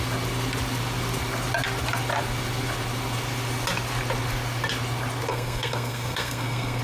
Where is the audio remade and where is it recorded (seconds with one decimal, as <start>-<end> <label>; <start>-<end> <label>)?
0.0-5.3 recorded; 5.3-6.8 remade